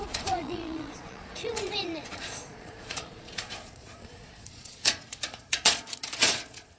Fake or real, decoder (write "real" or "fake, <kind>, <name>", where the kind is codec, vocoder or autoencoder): fake, vocoder, Vocos